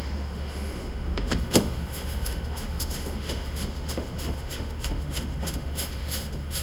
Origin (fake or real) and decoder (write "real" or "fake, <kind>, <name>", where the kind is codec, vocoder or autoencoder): fake, autoencoder, DAC-VAE